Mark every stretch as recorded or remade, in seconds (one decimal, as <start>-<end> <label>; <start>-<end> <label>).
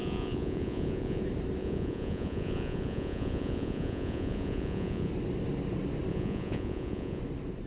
0.0-1.2 remade; 1.2-1.6 recorded; 1.6-5.1 remade; 5.1-6.1 recorded; 6.1-7.2 remade; 7.2-7.7 recorded